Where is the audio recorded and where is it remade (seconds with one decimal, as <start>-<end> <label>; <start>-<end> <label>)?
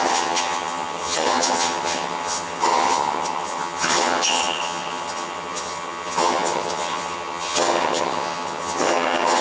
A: 0.0-9.4 remade